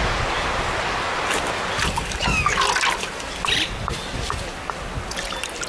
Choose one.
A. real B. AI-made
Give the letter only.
A